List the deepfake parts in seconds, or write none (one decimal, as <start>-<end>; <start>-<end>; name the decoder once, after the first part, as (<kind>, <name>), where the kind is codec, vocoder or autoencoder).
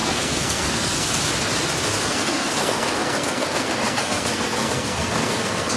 0.0-1.2 (codec, SNAC); 2.1-5.8